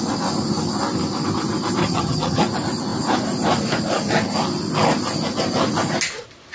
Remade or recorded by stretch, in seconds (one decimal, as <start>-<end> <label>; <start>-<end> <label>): 0.0-1.8 recorded; 1.8-2.4 remade; 2.4-6.5 recorded